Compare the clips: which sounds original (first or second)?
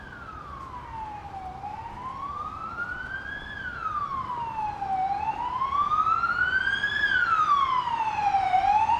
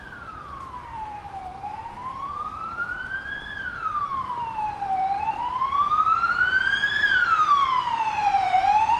first